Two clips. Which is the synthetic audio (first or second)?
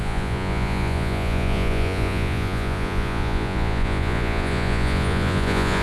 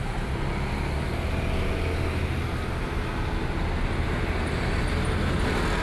first